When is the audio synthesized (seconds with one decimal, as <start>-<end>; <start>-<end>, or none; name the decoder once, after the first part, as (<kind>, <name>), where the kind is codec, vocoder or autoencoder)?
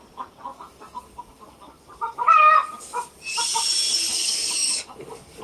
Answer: 0.5-3.4 (codec, DAC); 4.1-5.4